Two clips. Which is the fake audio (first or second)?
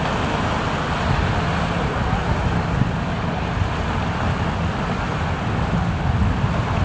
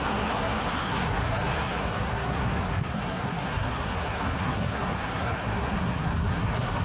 second